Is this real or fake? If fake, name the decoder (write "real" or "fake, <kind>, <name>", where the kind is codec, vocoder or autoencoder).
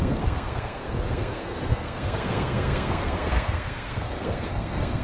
fake, codec, SNAC